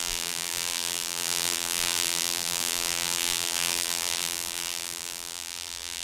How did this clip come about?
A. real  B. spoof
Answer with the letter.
B